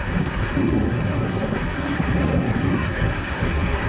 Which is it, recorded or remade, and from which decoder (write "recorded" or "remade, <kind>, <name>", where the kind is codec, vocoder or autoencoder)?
remade, codec, SNAC